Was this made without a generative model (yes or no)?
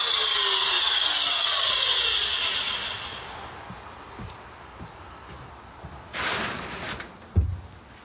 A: yes